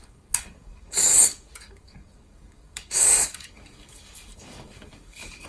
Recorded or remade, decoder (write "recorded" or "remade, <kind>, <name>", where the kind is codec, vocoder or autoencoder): remade, codec, DAC